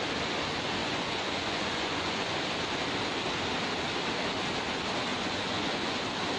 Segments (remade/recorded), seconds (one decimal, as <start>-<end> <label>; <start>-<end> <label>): 0.0-0.8 recorded; 0.8-2.4 remade; 2.4-5.1 recorded; 5.1-6.0 remade; 6.0-6.4 recorded